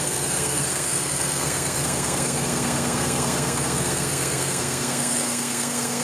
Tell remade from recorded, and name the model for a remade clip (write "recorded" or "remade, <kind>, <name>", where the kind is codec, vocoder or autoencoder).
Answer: remade, codec, SNAC